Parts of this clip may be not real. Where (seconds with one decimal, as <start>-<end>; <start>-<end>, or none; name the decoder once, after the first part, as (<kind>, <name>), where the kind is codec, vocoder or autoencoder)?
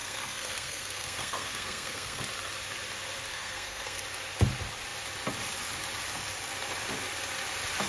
0.0-2.2 (codec, SNAC); 3.3-4.0